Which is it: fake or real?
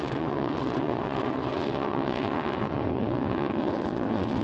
fake